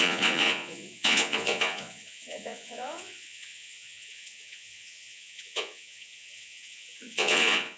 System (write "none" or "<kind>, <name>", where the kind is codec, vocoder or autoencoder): vocoder, Vocos